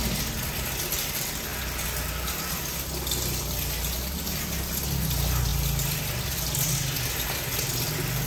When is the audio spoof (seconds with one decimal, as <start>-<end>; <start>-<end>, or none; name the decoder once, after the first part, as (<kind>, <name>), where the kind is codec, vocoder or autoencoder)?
none